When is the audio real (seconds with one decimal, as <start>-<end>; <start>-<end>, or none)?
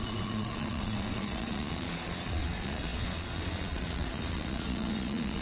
none